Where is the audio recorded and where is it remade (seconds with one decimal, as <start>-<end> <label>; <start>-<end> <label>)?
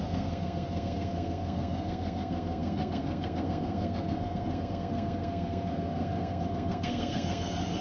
0.0-7.8 remade